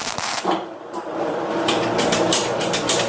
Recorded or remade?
remade